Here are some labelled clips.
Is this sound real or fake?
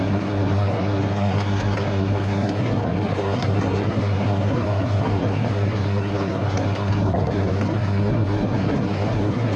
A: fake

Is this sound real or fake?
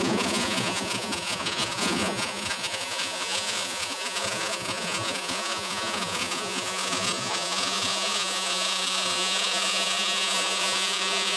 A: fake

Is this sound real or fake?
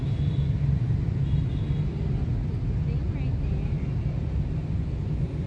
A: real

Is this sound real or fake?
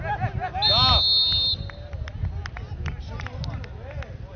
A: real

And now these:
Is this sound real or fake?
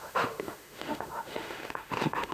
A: fake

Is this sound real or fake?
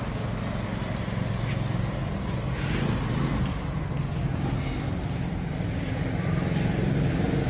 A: real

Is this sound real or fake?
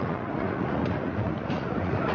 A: fake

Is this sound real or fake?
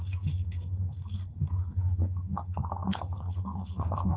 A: fake